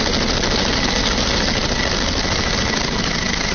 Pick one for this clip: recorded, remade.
recorded